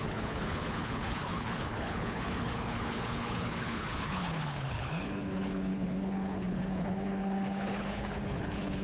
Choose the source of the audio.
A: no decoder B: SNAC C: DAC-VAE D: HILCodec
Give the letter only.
D